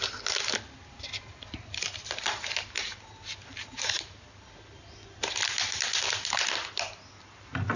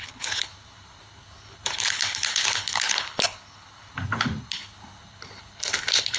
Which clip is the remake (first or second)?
second